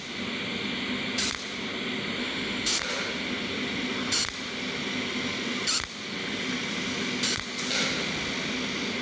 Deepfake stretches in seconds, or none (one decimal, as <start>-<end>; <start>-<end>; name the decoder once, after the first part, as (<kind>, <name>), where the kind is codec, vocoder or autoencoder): 2.2-2.8 (autoencoder, DAC-VAE)